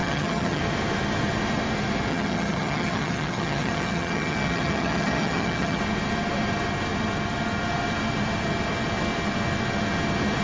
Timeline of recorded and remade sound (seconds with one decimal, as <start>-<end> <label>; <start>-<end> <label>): 0.0-0.6 remade; 0.6-2.1 recorded; 2.1-5.8 remade; 5.8-10.4 recorded